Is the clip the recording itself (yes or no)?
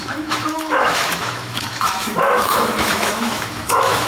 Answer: no